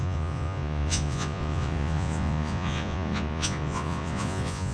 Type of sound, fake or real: fake